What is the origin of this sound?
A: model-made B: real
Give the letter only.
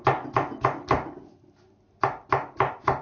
B